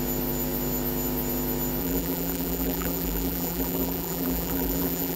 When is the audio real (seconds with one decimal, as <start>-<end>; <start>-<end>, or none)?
0.0-1.8